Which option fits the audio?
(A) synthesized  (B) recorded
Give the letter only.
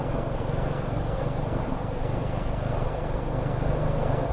A